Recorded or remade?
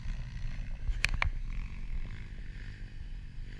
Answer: recorded